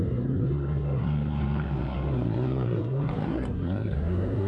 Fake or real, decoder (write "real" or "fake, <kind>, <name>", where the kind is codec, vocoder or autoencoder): fake, codec, SNAC